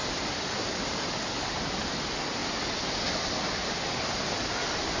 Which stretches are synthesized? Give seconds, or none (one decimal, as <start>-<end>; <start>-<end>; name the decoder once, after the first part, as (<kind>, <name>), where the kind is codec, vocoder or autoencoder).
none